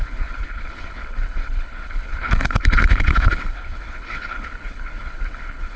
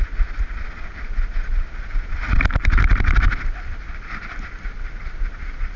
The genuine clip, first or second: second